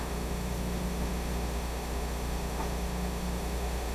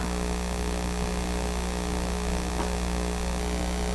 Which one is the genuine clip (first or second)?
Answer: second